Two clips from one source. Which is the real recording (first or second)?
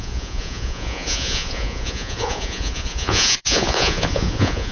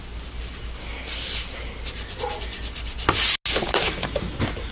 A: second